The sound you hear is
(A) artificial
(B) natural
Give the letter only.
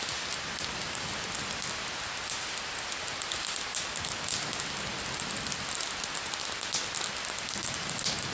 B